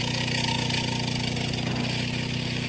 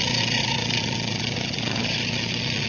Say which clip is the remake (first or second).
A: second